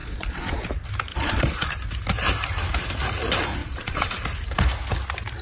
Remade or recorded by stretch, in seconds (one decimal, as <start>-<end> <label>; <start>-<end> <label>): 0.0-0.6 remade; 0.6-1.1 recorded; 1.1-1.7 remade; 1.7-3.6 recorded; 3.6-4.1 remade; 4.1-5.4 recorded